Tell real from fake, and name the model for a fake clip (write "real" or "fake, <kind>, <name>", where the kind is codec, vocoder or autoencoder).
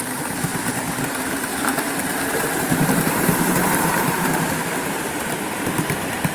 fake, vocoder, BigVGAN v2